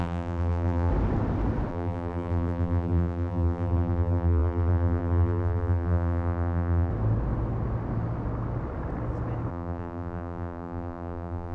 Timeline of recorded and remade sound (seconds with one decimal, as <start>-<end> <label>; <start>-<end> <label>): 0.0-0.9 remade; 0.9-1.7 recorded; 1.7-6.9 remade; 6.9-9.5 recorded; 9.5-11.5 remade